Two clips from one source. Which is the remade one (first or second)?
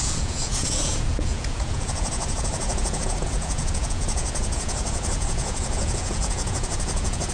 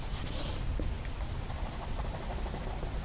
first